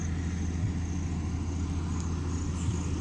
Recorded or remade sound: recorded